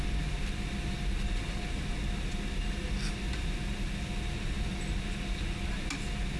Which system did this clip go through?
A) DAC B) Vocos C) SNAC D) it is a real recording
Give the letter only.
D